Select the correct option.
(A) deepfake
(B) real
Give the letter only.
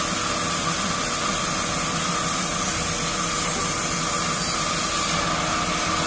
B